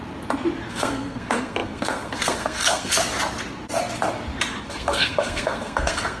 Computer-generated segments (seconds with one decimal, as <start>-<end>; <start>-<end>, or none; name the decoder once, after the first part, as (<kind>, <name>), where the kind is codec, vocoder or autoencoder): 0.7-3.0 (codec, SNAC); 4.6-6.2